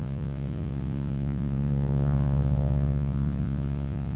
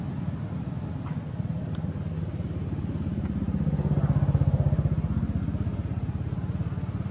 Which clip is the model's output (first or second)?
first